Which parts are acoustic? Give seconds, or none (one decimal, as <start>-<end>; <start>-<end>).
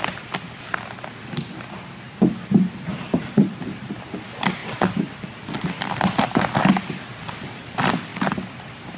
0.0-2.9; 4.1-4.6; 5.3-8.1